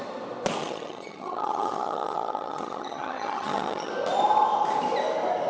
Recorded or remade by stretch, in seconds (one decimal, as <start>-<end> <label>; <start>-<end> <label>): 0.0-0.6 recorded; 0.6-3.9 remade; 3.9-5.5 recorded